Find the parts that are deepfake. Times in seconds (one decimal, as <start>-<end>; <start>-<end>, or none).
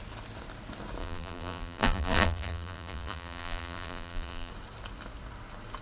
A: 1.0-4.5